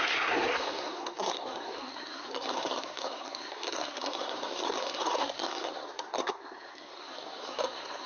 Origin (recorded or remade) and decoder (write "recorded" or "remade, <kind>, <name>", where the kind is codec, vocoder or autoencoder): remade, codec, SNAC